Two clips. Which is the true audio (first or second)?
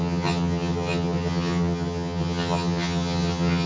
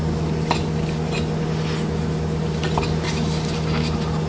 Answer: second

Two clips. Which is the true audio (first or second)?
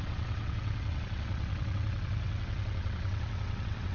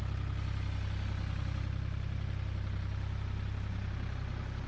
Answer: second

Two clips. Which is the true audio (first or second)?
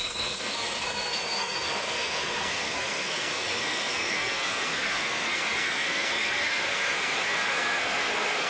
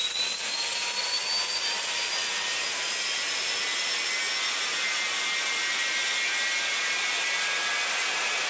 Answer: second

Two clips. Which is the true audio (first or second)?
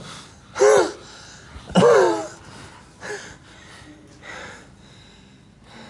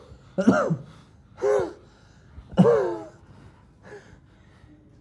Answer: second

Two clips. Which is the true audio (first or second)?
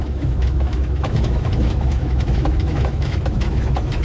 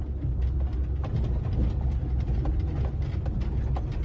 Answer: second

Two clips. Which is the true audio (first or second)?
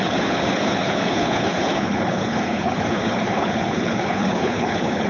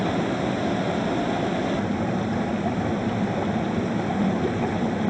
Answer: second